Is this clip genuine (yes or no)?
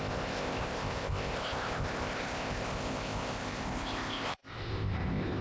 no